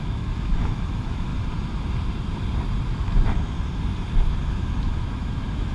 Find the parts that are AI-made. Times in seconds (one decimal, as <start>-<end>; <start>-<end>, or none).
0.0-1.3; 4.3-5.7

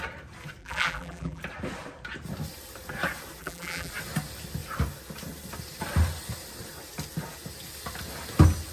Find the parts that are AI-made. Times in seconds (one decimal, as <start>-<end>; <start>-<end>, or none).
0.6-1.4; 3.4-3.9

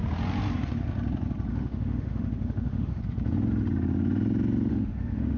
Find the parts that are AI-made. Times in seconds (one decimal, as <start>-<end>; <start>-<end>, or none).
1.5-3.0; 4.7-5.4